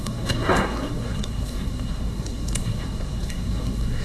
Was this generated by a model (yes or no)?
yes